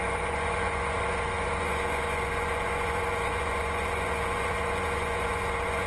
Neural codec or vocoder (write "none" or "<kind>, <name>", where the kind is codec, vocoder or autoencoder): vocoder, Vocos